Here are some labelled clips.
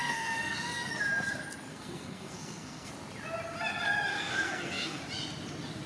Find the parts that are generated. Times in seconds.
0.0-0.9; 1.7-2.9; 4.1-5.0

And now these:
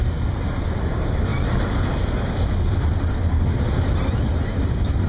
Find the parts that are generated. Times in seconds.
none

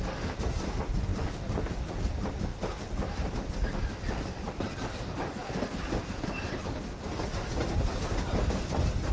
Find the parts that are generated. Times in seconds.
none

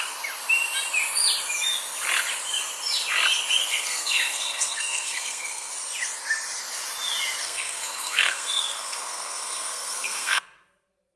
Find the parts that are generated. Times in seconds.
3.6-5.7; 7.4-10.4

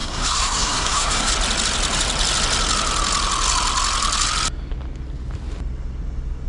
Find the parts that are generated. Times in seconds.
0.0-1.3

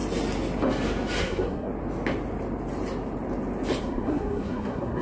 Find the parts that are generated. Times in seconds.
1.2-1.7; 3.8-5.0

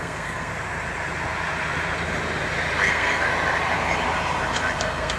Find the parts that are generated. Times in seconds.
0.0-0.5; 2.9-3.3; 4.8-5.2